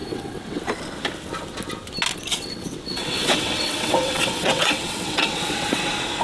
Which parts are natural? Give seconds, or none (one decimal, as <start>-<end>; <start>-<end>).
0.6-2.3; 5.8-6.2

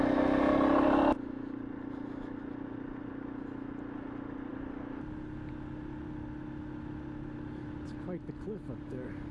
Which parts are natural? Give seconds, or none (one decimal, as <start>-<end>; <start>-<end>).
0.0-9.3